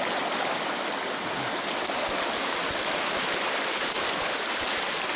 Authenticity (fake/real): real